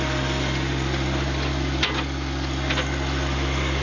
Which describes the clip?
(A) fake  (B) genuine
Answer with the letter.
B